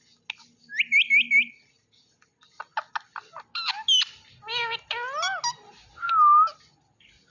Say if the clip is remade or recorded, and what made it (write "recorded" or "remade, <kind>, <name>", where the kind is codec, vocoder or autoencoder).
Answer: recorded